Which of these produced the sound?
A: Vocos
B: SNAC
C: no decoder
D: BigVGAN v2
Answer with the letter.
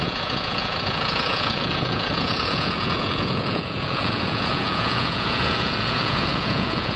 A